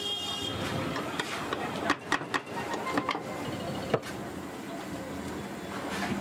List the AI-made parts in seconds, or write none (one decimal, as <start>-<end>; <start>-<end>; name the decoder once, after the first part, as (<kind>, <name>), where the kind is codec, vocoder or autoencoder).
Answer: 0.5-1.8 (vocoder, BigVGAN v2)